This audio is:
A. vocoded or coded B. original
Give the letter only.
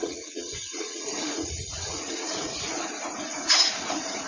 A